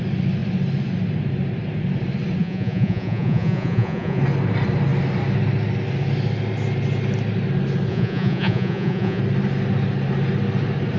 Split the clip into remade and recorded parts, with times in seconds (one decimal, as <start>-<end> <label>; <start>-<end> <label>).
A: 0.0-2.4 recorded; 2.4-4.2 remade; 4.2-7.9 recorded; 7.9-9.2 remade; 9.2-11.0 recorded

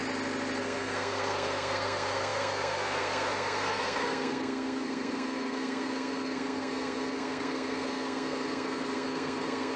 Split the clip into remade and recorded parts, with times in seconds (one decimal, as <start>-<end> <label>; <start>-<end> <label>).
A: 0.0-0.6 recorded; 0.6-9.8 remade

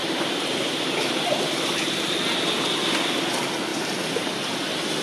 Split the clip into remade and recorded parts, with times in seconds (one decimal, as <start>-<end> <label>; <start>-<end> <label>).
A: 0.0-1.3 remade; 1.3-3.7 recorded; 3.7-4.5 remade; 4.5-5.0 recorded

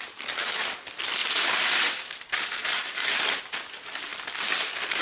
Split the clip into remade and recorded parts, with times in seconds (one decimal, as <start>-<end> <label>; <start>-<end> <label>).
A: 0.0-1.2 recorded; 1.2-3.4 remade; 3.4-5.0 recorded

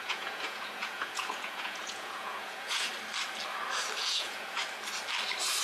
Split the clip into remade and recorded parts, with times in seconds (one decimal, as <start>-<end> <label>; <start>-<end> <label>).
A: 0.0-2.9 remade; 2.9-4.0 recorded; 4.0-4.6 remade; 4.6-5.6 recorded